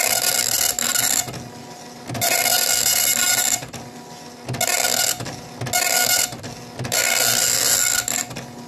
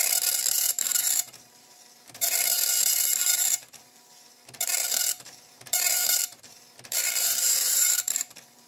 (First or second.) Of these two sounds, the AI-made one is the second